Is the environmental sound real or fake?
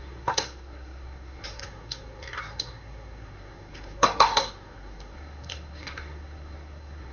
fake